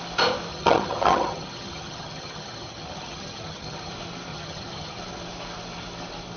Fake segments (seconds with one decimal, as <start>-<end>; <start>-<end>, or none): 0.5-3.9; 4.3-5.0